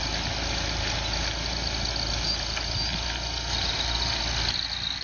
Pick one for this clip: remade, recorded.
recorded